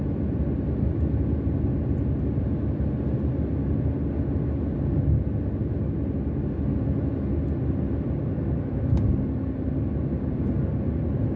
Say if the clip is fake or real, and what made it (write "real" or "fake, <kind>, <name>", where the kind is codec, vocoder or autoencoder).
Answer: real